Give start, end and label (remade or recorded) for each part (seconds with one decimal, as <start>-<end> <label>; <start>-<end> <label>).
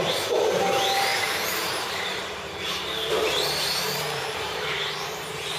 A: 0.0-5.6 remade